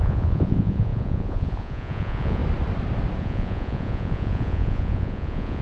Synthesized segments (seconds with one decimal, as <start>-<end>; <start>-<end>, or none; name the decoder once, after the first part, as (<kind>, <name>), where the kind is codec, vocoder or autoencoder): 0.0-2.4 (vocoder, Vocos); 3.2-5.6